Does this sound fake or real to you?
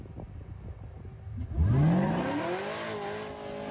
real